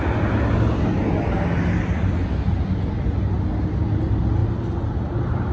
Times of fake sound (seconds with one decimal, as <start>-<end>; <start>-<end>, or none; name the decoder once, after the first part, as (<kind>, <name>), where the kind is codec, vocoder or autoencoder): none

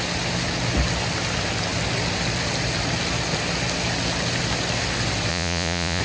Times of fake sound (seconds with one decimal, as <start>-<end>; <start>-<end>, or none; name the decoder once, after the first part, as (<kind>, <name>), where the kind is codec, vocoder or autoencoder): 5.3-6.0 (vocoder, Vocos)

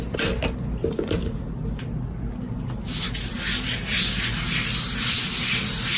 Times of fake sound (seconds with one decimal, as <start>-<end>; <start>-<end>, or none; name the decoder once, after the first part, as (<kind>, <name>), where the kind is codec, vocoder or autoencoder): none

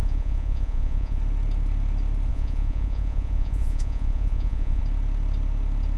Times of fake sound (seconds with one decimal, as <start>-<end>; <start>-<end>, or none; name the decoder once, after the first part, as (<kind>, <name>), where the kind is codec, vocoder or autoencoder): 0.0-1.2 (vocoder, Vocos); 2.3-4.8

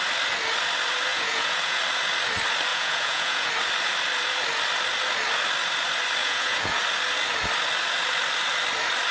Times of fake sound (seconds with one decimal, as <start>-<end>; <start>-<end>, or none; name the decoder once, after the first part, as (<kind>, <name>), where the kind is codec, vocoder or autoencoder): 1.1-1.8 (vocoder, Vocos); 2.7-3.5; 6.2-6.8

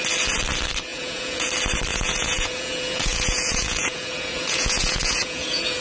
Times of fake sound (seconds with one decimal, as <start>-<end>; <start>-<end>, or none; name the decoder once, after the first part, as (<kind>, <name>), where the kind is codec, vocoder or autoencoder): 0.9-1.5 (vocoder, Vocos); 1.9-5.8